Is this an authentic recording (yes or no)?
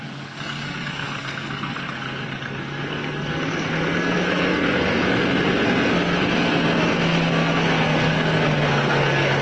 no